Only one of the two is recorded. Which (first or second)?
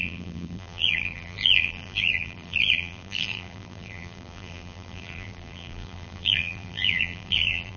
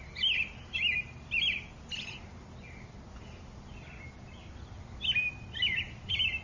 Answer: second